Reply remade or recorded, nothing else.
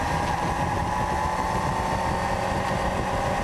recorded